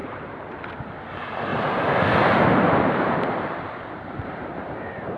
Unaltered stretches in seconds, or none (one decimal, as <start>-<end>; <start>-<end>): 0.6-1.5; 4.6-5.2